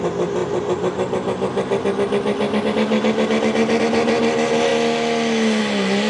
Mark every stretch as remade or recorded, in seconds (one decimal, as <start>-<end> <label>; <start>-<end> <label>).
0.0-6.1 recorded